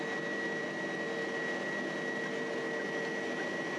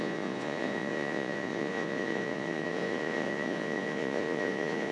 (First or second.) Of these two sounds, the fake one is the second